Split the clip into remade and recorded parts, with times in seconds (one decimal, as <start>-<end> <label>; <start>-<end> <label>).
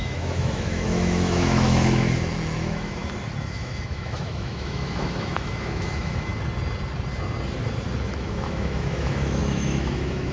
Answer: 0.0-3.0 remade; 3.0-3.5 recorded; 3.5-6.3 remade; 6.3-8.1 recorded; 8.1-10.3 remade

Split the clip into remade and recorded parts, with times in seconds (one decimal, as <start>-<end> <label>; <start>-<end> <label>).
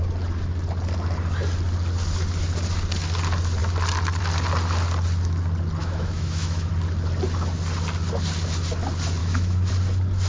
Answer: 0.0-5.8 recorded; 5.8-6.7 remade; 6.7-9.2 recorded; 9.2-9.7 remade; 9.7-10.3 recorded